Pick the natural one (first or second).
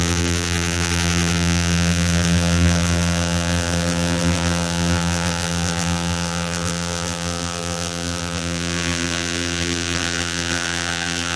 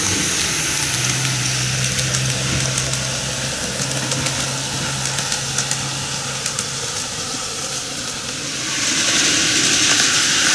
second